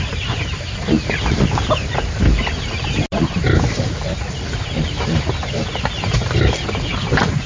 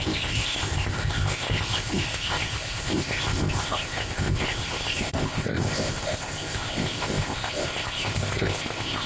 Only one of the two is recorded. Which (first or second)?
first